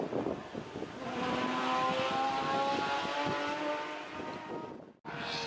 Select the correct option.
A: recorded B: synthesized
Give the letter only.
A